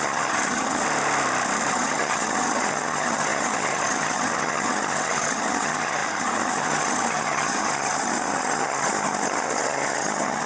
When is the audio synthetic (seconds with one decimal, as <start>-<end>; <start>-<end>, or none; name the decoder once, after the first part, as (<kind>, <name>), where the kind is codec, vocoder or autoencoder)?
0.0-0.8 (vocoder, HiFi-GAN); 1.7-10.5